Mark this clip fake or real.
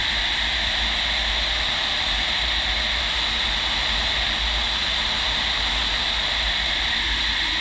real